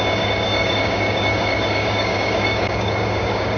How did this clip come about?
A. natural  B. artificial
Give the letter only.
B